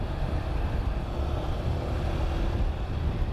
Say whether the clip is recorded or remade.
recorded